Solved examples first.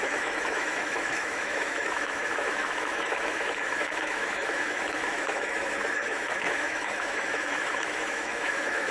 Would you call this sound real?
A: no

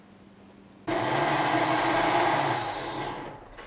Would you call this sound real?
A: yes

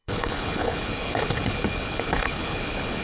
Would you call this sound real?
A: no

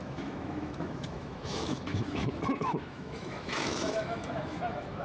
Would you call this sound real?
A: no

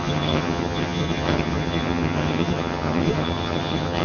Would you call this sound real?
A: no